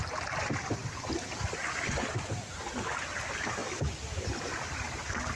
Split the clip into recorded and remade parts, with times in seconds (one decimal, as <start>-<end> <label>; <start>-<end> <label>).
0.0-5.4 recorded